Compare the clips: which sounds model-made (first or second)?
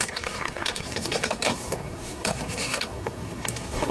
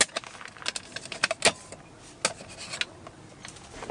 first